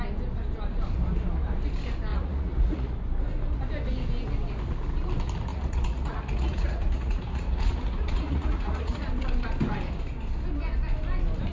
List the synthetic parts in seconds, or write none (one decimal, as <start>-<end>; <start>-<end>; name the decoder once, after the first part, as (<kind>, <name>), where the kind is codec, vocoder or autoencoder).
2.1-2.9 (vocoder, Vocos); 5.5-9.1